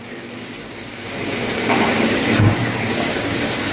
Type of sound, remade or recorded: remade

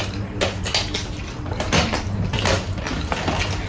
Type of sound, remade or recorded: recorded